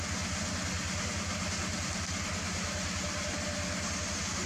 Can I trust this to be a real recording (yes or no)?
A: yes